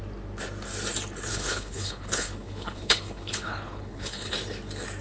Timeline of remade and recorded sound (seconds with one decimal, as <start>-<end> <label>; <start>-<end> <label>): 0.0-1.3 recorded; 1.3-4.3 remade; 4.3-5.0 recorded